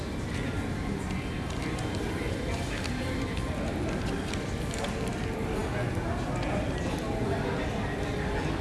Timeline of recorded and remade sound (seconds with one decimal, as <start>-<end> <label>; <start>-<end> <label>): 0.0-8.6 recorded